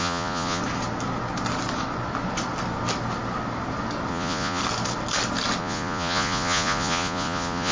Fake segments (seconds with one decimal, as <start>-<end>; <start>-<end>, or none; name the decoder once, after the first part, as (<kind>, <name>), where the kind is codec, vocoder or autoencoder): 0.0-0.6 (vocoder, Vocos); 4.1-4.6; 5.6-7.7